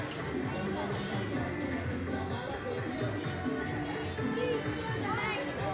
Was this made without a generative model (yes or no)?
yes